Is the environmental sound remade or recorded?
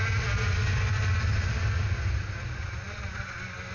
recorded